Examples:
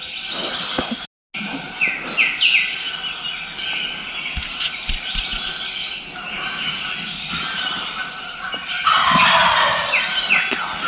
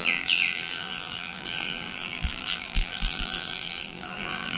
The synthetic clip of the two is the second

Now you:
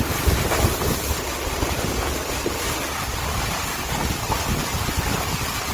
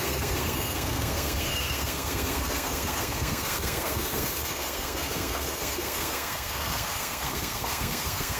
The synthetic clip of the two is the second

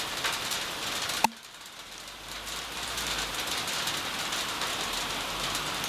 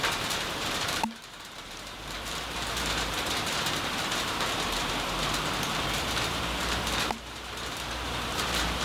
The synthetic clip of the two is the second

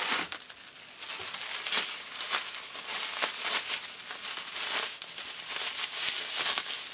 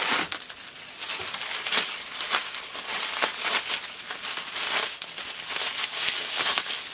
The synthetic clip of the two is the second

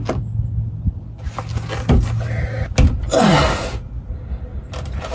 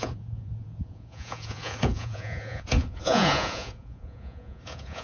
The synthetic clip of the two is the second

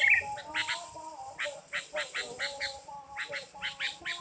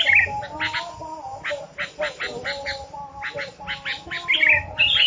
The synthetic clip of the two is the first